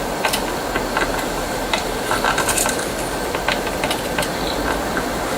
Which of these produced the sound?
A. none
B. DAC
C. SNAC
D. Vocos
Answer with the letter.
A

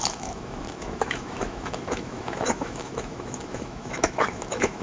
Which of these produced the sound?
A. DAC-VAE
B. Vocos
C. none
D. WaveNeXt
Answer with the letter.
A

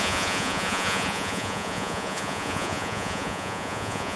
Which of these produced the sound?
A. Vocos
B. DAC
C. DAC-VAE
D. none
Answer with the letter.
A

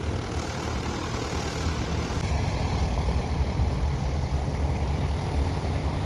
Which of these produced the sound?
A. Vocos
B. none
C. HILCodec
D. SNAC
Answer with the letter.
B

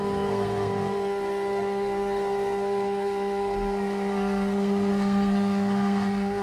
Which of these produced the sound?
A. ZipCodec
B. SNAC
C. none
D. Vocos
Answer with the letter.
B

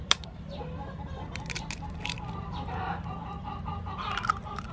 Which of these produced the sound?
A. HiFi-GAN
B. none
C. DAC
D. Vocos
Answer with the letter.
B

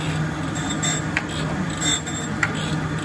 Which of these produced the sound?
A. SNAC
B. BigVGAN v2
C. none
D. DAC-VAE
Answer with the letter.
C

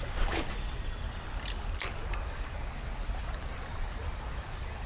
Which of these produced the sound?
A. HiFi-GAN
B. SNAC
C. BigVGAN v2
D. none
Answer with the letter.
D